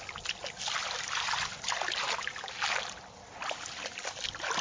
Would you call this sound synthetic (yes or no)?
no